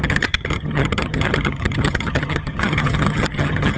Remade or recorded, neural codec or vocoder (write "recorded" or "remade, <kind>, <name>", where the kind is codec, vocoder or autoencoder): remade, vocoder, HiFi-GAN